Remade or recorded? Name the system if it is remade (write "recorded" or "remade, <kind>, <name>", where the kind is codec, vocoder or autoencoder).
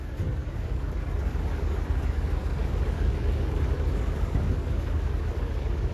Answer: remade, codec, DAC